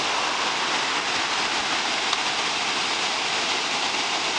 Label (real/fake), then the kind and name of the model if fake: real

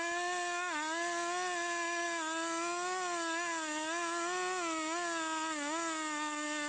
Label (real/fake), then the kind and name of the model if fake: real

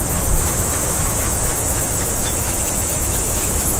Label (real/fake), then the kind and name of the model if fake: fake, autoencoder, DAC-VAE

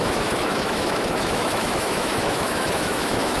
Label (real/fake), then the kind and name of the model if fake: fake, autoencoder, DAC-VAE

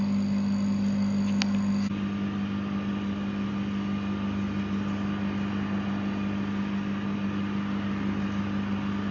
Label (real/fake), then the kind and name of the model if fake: real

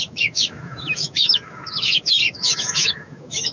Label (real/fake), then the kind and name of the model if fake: fake, autoencoder, DAC-VAE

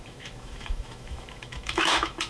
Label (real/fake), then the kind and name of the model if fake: fake, autoencoder, DAC-VAE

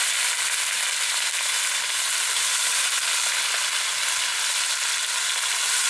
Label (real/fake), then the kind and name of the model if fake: real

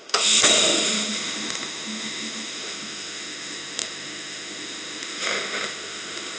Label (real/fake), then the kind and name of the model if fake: fake, autoencoder, DAC-VAE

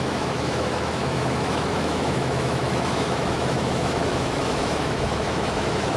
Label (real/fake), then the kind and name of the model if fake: fake, autoencoder, DAC-VAE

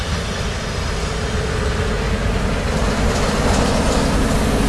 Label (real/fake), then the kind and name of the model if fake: real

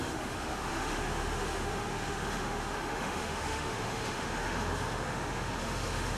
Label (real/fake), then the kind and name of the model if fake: fake, autoencoder, DAC-VAE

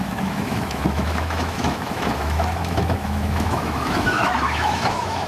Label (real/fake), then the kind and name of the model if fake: fake, autoencoder, DAC-VAE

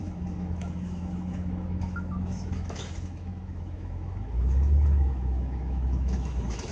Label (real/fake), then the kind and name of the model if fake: fake, autoencoder, DAC-VAE